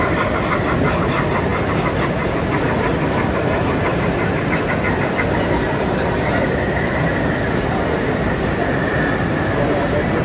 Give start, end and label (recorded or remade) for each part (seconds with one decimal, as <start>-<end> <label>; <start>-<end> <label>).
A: 0.0-1.5 recorded; 1.5-2.7 remade; 2.7-10.2 recorded